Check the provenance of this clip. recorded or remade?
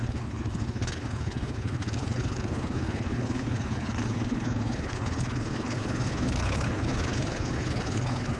remade